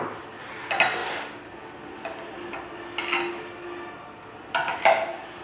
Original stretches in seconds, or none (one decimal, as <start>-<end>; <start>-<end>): 0.0-5.4